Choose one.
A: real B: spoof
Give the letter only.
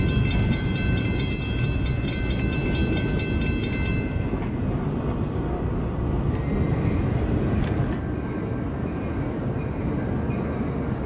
A